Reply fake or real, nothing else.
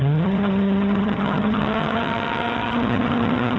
fake